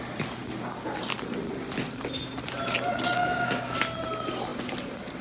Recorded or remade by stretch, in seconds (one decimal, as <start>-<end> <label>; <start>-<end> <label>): 0.0-3.2 recorded; 3.2-3.8 remade; 3.8-5.2 recorded